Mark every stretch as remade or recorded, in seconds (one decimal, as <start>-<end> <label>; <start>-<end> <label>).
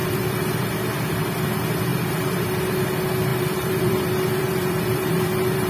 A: 0.0-0.7 remade; 0.7-1.9 recorded; 1.9-2.6 remade; 2.6-3.3 recorded; 3.3-5.7 remade